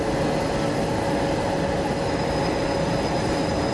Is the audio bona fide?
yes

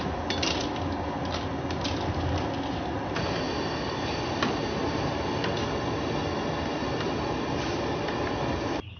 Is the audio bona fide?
yes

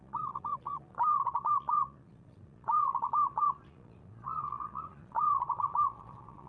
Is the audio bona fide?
no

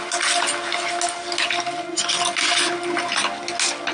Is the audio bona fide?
yes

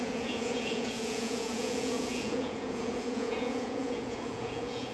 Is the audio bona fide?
no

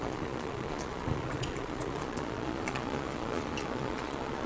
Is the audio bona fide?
no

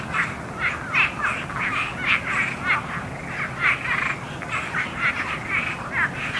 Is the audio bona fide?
yes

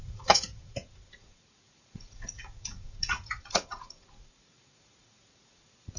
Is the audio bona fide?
no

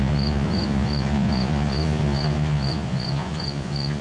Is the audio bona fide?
no